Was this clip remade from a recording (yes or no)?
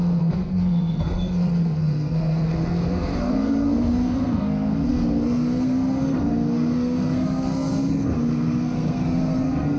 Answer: yes